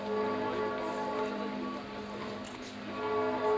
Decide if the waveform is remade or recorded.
recorded